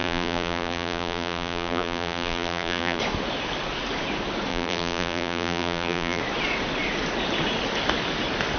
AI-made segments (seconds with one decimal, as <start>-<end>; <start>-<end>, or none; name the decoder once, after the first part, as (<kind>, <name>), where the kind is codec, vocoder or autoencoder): 0.0-3.0 (vocoder, BigVGAN v2); 4.5-6.2